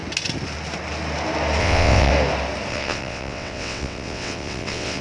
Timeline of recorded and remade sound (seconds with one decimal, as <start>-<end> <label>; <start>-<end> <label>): 0.0-1.6 recorded; 1.6-2.1 remade; 2.1-2.7 recorded; 2.7-5.0 remade